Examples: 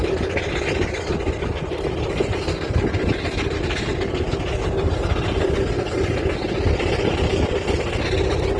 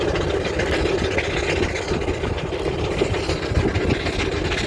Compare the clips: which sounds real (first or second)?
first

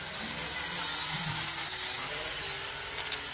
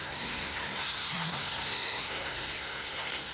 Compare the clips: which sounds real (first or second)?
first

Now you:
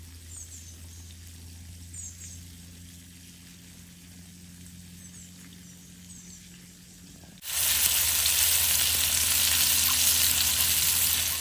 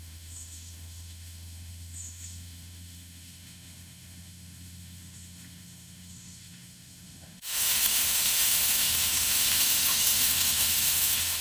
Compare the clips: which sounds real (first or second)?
first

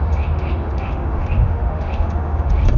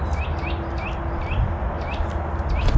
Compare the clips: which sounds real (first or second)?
second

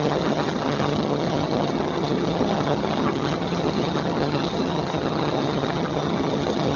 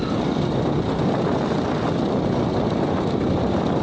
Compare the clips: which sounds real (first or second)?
second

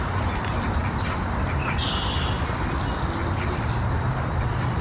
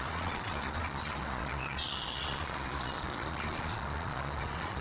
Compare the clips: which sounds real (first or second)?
first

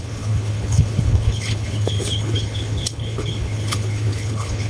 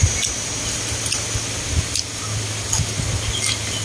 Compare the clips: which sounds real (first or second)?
second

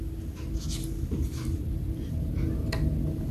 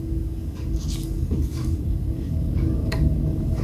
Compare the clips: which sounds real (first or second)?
first